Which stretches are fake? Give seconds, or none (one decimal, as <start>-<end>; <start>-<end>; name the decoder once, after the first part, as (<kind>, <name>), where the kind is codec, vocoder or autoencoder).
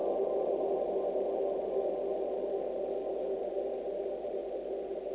3.1-4.4 (vocoder, BigVGAN v2)